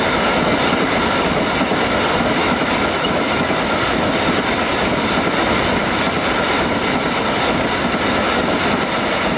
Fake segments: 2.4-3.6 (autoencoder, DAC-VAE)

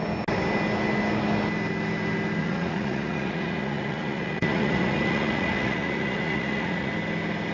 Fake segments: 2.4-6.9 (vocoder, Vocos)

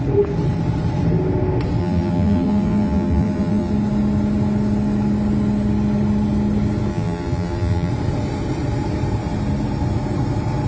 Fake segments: 1.8-3.7 (vocoder, BigVGAN v2); 6.9-7.9

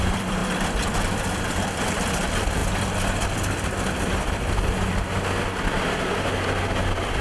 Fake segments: 0.0-0.4 (vocoder, BigVGAN v2); 1.0-2.6

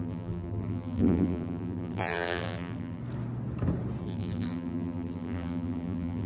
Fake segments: 0.0-3.0 (vocoder, BigVGAN v2); 4.0-6.3

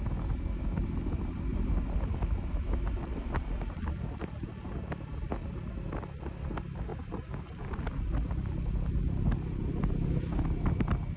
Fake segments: 1.5-4.0 (vocoder, BigVGAN v2); 6.9-7.7